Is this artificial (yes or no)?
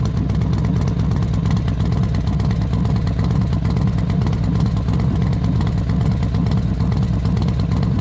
no